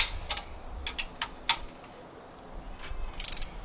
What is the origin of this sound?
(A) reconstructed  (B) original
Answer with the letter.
B